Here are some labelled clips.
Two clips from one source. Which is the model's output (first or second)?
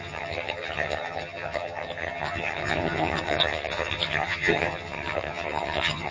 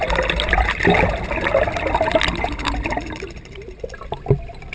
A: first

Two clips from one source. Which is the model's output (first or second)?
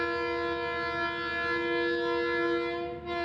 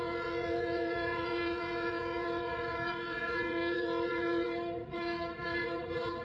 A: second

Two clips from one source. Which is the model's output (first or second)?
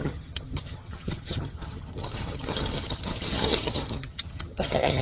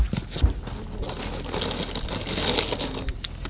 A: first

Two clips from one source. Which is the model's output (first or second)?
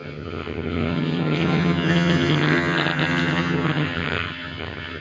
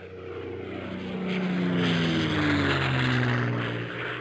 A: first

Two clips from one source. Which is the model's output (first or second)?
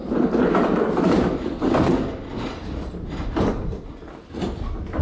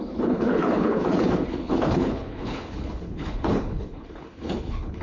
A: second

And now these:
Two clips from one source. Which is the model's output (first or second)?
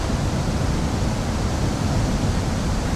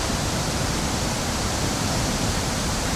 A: second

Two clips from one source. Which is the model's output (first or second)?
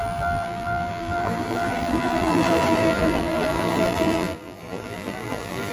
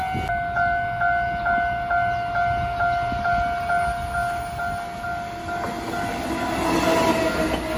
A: first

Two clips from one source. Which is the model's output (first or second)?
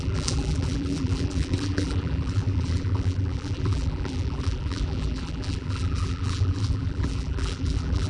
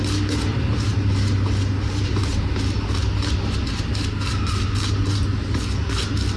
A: first